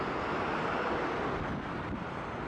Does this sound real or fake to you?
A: real